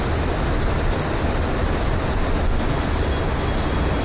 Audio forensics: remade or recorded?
recorded